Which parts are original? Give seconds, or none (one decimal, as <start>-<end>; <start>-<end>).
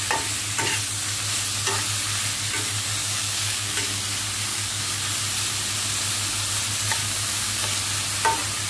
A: 0.0-3.0; 4.0-4.5; 5.0-7.0; 7.8-8.7